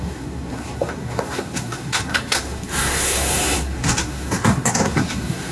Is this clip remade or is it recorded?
remade